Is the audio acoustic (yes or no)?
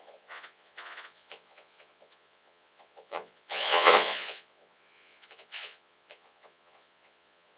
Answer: no